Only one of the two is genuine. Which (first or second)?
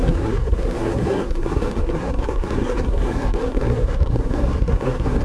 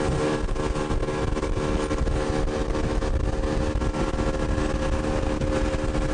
second